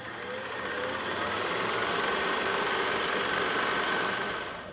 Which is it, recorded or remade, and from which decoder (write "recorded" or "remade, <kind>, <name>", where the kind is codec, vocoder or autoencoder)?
recorded